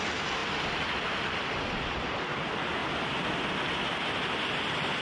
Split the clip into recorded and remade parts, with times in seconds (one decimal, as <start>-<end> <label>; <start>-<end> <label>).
0.0-5.0 recorded